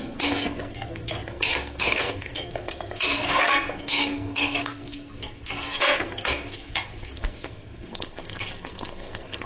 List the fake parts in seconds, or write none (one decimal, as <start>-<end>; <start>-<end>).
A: 0.0-9.5